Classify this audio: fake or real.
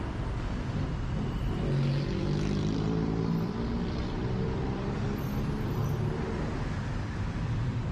fake